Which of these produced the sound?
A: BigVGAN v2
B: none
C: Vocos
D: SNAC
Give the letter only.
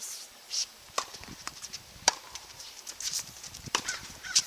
A